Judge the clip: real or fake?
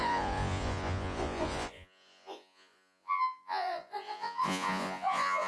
fake